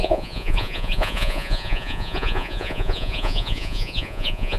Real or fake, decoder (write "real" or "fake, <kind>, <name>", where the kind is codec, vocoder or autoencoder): fake, vocoder, Vocos